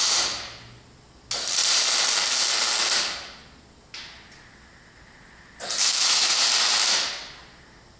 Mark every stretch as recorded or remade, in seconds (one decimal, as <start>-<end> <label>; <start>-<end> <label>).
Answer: 0.0-5.8 recorded; 5.8-6.4 remade; 6.4-8.0 recorded